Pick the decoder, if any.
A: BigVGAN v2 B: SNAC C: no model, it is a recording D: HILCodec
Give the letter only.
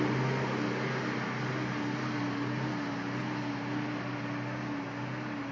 C